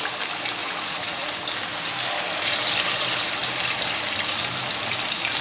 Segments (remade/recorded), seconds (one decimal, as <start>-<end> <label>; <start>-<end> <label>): 0.0-0.6 recorded; 0.6-1.3 remade; 1.3-5.4 recorded